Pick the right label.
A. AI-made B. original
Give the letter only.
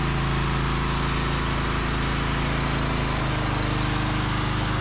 B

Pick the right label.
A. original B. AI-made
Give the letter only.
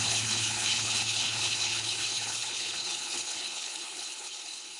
B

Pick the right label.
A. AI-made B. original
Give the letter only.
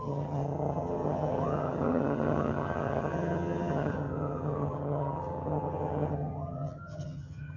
A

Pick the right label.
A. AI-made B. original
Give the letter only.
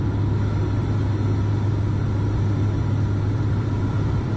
B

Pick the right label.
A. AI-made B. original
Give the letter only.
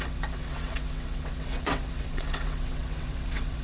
A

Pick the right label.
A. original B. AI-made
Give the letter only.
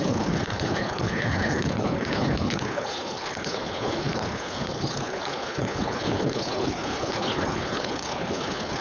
B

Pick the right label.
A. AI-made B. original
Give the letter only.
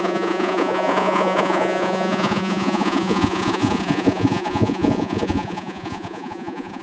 A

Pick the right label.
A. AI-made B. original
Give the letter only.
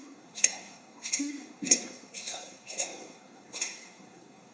A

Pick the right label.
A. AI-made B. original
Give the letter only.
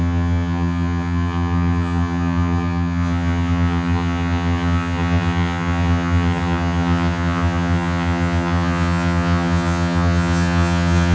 A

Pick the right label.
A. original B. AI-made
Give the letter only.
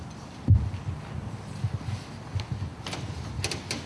A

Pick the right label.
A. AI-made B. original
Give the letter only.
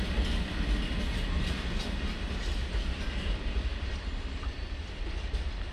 B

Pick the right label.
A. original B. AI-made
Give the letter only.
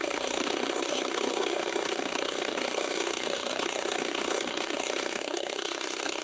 B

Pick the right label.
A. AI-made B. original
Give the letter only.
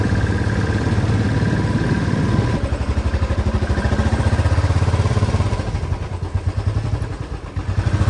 A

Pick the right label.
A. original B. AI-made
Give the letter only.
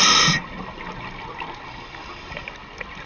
A